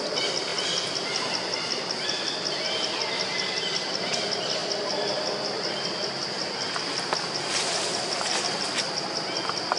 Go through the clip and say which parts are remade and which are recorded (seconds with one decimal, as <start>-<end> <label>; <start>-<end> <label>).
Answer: 0.0-9.8 recorded